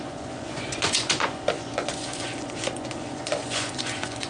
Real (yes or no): no